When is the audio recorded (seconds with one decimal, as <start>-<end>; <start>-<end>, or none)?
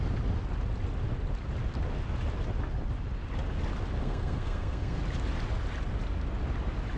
0.0-4.0; 5.0-7.0